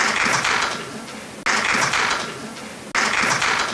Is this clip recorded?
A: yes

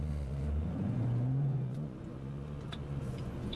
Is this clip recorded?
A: no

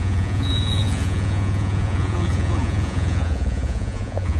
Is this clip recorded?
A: no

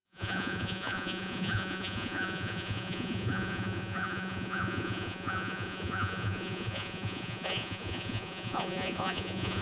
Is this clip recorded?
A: no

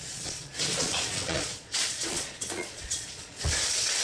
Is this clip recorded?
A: no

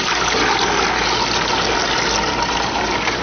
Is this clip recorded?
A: yes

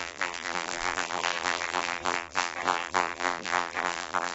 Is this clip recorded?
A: no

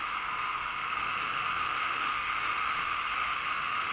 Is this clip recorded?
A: no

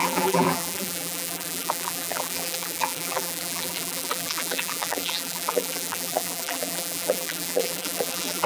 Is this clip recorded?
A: no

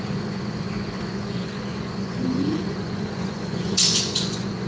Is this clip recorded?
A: no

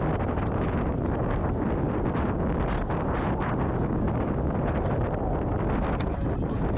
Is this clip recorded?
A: yes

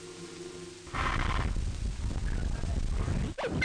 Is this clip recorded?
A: yes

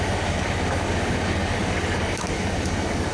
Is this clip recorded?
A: no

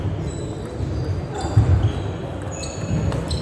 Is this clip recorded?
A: yes